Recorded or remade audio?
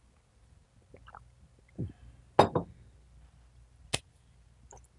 recorded